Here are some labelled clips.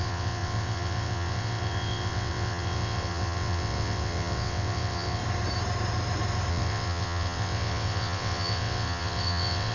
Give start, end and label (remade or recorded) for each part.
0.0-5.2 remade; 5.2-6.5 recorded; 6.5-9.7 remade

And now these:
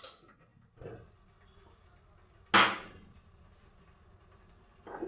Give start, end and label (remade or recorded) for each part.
0.0-5.1 recorded

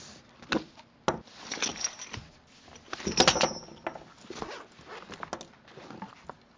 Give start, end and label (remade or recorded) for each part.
0.0-6.6 recorded

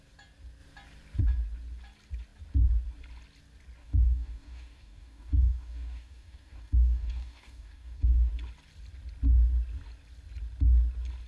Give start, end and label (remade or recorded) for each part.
0.0-3.8 recorded; 3.8-8.3 remade; 8.3-11.3 recorded

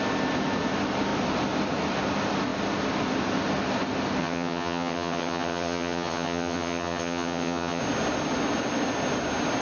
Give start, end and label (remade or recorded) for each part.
0.0-4.2 recorded; 4.2-7.8 remade; 7.8-9.6 recorded